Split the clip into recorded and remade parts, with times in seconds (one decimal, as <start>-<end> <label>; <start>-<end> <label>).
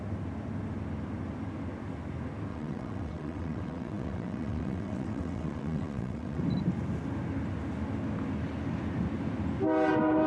0.0-2.5 recorded; 2.5-6.4 remade; 6.4-10.3 recorded